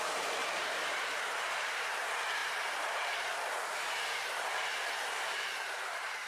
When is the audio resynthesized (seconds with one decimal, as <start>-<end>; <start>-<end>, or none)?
0.0-6.3